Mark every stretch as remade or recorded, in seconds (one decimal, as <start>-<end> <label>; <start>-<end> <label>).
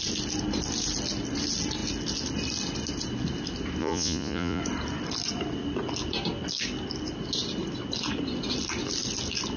0.0-3.8 recorded; 3.8-4.6 remade; 4.6-9.6 recorded